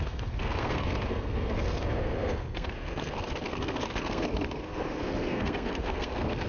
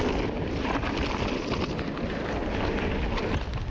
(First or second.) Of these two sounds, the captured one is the second